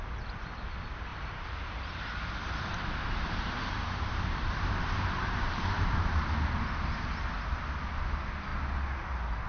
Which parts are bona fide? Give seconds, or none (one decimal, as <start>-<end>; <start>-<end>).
0.0-1.1; 2.0-2.4; 7.6-9.5